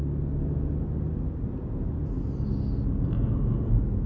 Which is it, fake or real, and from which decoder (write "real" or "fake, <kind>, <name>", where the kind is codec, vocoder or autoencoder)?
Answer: real